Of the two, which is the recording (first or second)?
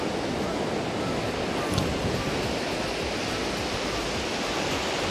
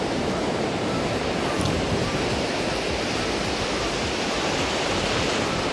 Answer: first